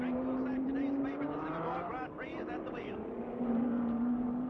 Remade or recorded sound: remade